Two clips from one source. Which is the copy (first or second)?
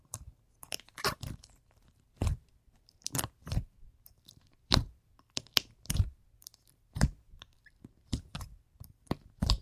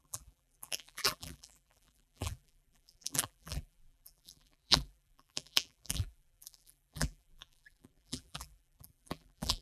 second